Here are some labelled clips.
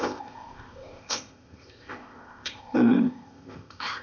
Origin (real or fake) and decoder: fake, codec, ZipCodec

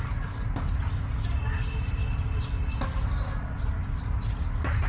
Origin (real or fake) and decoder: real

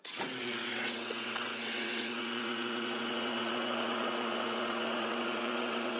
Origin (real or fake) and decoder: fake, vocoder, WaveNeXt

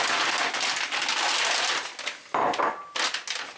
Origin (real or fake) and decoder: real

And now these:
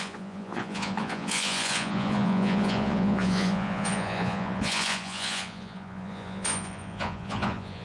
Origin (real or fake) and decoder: fake, vocoder, Vocos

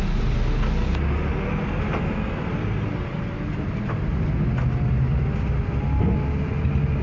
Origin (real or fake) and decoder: real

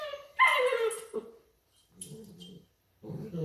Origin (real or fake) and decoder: fake, vocoder, BigVGAN v2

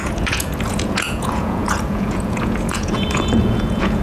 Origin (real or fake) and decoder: fake, vocoder, Vocos